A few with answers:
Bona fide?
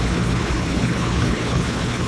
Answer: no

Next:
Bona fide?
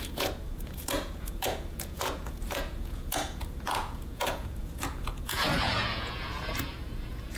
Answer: no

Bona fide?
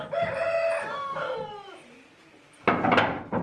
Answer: yes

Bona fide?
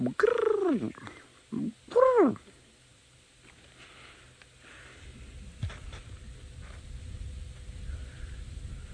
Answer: yes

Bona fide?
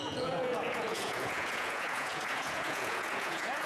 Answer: no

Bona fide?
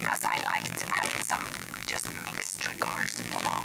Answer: no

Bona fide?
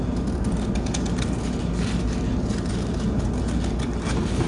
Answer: yes